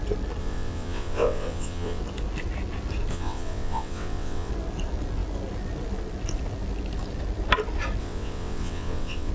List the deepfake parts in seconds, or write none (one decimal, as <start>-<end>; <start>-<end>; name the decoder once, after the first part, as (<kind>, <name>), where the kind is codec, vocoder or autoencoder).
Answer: 0.4-2.0 (vocoder, WaveNeXt); 3.1-4.5; 8.0-9.3